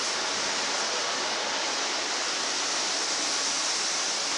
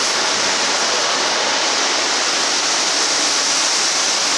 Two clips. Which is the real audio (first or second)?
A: first